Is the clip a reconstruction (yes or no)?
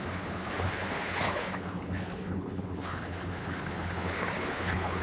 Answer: yes